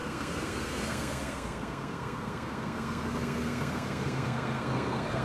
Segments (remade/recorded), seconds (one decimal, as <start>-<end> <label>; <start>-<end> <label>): 0.0-5.2 remade